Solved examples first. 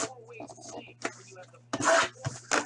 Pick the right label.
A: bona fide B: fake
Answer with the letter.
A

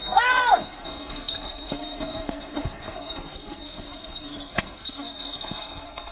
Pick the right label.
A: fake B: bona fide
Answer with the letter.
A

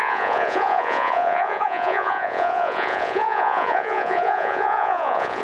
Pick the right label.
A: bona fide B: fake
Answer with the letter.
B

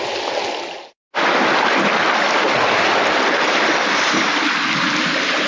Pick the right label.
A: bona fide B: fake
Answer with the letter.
A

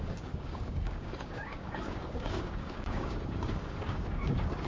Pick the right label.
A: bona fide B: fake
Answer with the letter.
B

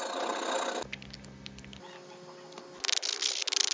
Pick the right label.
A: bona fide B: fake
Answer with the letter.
A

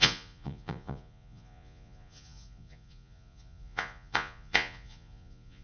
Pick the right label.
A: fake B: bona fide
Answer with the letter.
A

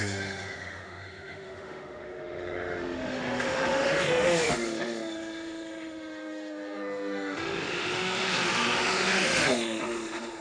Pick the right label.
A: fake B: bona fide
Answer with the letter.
A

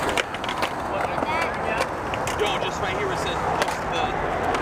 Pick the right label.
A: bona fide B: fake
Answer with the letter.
A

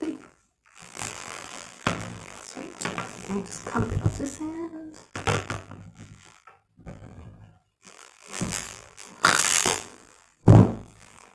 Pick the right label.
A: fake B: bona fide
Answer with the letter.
A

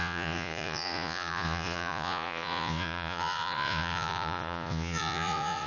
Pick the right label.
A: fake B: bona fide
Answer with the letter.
A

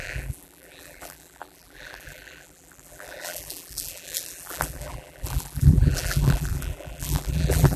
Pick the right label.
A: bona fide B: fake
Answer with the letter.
B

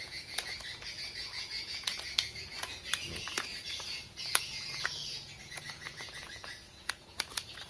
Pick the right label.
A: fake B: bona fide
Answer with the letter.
A